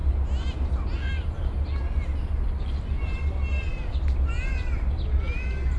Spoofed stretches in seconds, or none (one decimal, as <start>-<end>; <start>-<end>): none